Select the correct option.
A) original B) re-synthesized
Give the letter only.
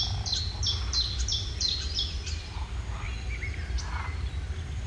A